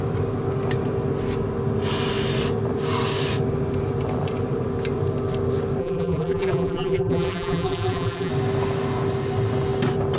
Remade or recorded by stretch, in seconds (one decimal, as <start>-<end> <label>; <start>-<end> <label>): 0.0-5.8 recorded; 5.8-8.3 remade; 8.3-10.2 recorded

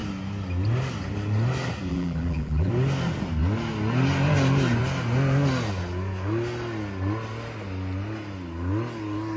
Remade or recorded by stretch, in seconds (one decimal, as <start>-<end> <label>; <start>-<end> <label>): 0.0-1.9 recorded; 1.9-2.7 remade; 2.7-9.4 recorded

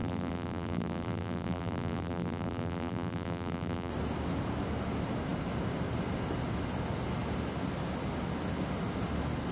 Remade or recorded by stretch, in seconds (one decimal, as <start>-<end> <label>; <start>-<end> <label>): 0.0-3.9 remade; 3.9-9.5 recorded

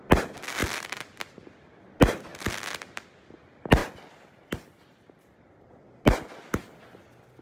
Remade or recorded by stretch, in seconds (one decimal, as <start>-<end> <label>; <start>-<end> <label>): 0.0-0.6 recorded; 0.6-1.6 remade; 1.6-3.8 recorded; 3.8-5.7 remade; 5.7-7.4 recorded

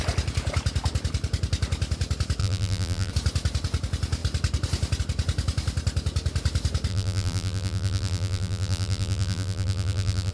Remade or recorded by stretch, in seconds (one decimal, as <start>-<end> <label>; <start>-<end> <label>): 0.0-2.4 recorded; 2.4-3.1 remade; 3.1-6.9 recorded; 6.9-10.3 remade